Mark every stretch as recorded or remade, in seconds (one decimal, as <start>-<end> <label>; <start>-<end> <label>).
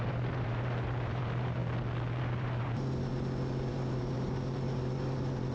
0.0-1.6 remade; 1.6-2.2 recorded; 2.2-3.1 remade; 3.1-3.7 recorded; 3.7-5.5 remade